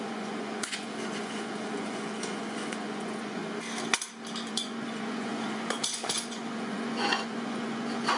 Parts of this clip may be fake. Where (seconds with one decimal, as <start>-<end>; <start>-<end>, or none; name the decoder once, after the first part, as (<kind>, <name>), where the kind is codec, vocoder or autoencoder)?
0.0-3.4 (vocoder, Vocos); 4.5-8.2